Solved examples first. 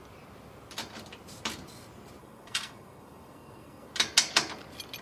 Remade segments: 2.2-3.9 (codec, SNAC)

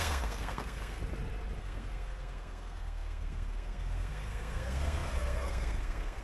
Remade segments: 0.0-1.0 (codec, SNAC); 1.6-6.2